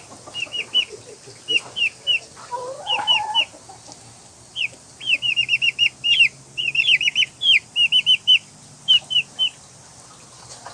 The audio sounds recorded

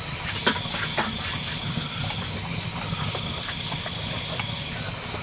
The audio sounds recorded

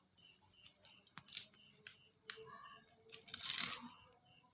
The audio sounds recorded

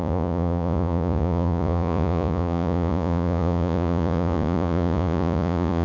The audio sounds remade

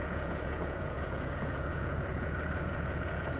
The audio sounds remade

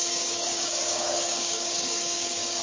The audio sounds remade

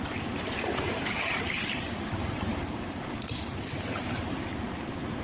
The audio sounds recorded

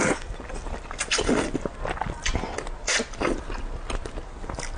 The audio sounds recorded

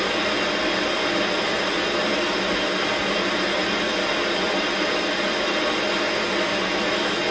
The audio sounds recorded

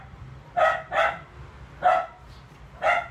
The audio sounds recorded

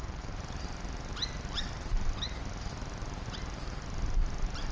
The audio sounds recorded